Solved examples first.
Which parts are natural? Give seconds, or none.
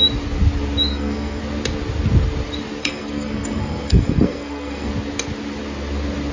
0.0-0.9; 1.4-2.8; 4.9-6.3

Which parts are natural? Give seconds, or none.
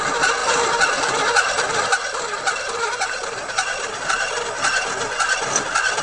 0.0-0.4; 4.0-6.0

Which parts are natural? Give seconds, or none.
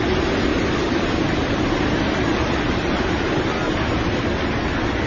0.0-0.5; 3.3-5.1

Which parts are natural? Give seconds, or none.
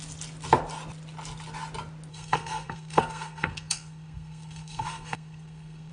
0.0-2.1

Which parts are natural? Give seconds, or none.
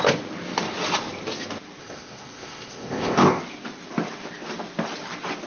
0.0-1.8; 3.4-5.5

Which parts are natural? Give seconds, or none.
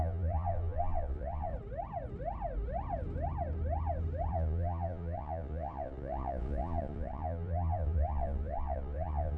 1.5-4.3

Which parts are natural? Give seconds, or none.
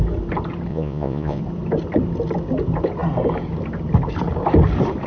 0.0-0.7; 1.4-5.1